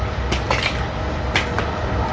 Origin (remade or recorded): recorded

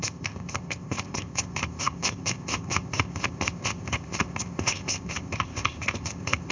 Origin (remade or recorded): remade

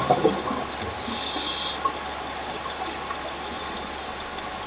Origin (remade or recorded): recorded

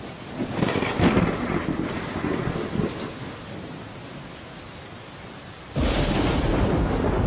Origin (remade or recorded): recorded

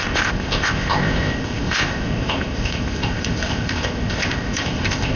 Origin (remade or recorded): remade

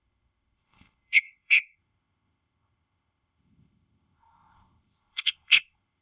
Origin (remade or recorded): remade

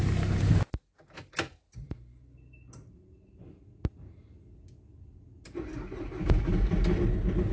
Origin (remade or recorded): recorded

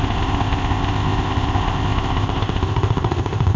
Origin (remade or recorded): remade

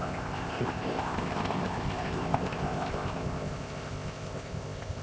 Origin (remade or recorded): remade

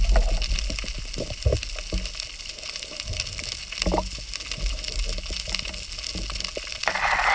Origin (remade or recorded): recorded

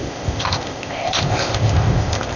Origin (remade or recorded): remade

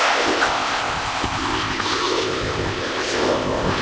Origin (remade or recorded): remade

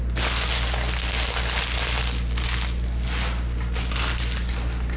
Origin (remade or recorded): recorded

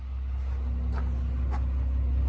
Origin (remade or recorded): recorded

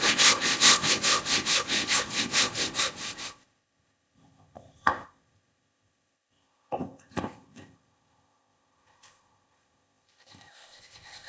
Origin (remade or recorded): remade